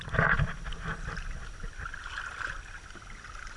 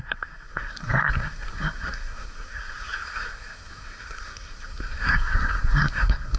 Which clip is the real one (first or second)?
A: first